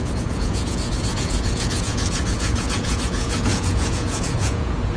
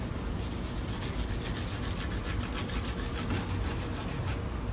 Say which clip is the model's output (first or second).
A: first